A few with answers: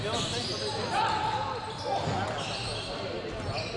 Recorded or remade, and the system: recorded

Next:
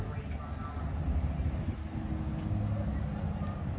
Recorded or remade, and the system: recorded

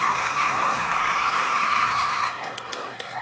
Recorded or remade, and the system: remade, codec, SNAC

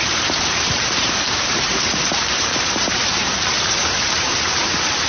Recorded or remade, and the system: remade, vocoder, BigVGAN v2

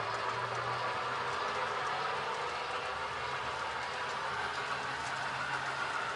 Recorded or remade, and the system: recorded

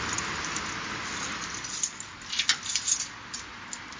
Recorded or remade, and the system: recorded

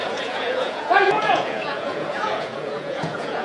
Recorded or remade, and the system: remade, vocoder, Vocos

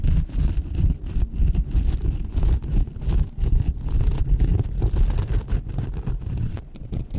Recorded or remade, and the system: recorded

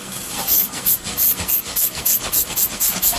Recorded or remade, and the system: remade, codec, SNAC